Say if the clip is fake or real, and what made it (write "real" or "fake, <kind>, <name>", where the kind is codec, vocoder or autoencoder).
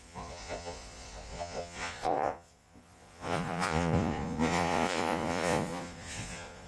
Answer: fake, vocoder, Vocos